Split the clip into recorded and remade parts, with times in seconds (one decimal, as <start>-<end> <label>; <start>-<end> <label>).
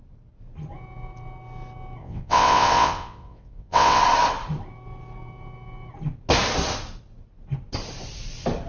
0.0-2.0 recorded; 2.0-4.0 remade; 4.0-8.7 recorded